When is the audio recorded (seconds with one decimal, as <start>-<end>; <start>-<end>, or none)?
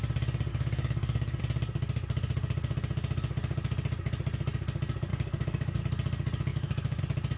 0.0-0.5; 1.4-5.1; 5.8-6.5; 7.0-7.4